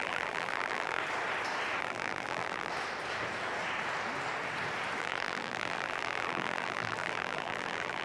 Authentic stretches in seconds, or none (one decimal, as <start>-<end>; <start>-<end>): 1.0-1.8; 2.7-5.0